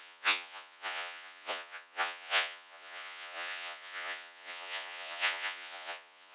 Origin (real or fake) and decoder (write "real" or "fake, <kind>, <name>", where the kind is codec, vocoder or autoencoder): fake, vocoder, Vocos